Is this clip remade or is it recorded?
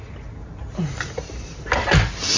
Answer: recorded